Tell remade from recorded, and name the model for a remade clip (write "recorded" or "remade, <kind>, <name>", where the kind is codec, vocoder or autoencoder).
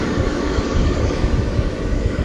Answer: remade, codec, DAC